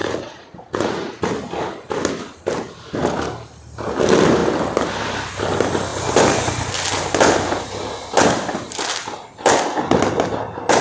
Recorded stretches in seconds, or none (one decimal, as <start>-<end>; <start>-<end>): 1.3-10.8